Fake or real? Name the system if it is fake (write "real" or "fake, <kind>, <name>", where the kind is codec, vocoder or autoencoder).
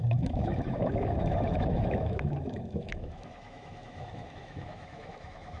fake, autoencoder, DAC-VAE